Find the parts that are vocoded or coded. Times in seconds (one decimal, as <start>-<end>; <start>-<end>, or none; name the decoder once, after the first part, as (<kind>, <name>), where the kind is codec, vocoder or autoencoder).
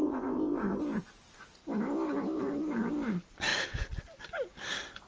0.0-0.8 (codec, ZipCodec)